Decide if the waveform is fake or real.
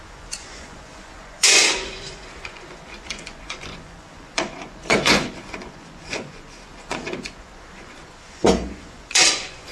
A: fake